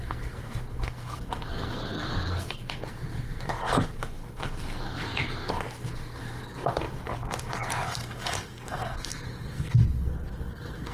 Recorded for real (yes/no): no